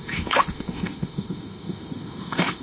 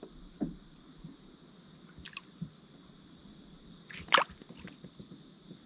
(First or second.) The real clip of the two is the second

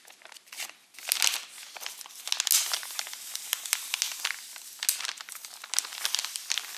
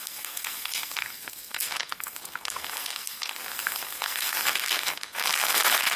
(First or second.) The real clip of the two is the first